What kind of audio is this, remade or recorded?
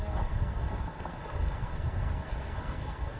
remade